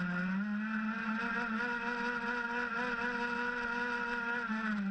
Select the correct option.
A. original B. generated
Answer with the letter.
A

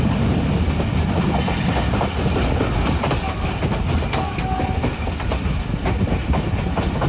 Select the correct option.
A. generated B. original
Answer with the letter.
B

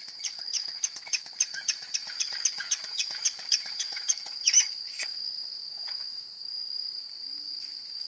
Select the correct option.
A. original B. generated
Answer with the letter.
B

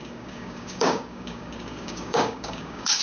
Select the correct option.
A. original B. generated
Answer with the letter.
B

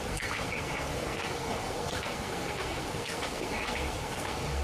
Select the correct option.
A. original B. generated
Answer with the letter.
B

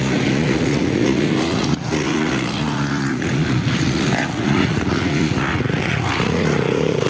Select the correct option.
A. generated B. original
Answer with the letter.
A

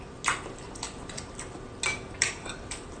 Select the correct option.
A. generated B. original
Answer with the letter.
B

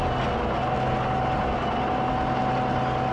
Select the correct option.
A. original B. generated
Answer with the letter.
A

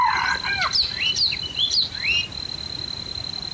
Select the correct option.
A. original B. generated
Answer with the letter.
A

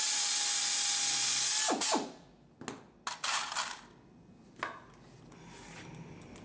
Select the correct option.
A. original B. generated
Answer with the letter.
A